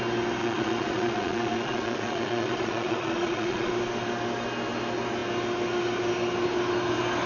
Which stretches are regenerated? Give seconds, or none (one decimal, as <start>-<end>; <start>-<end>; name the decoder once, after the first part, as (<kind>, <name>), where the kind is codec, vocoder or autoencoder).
0.4-3.7 (vocoder, Vocos)